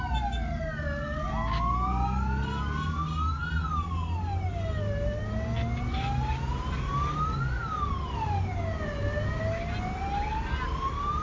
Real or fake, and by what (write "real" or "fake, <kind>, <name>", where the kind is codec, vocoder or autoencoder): real